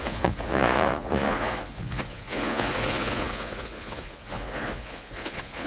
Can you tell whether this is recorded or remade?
remade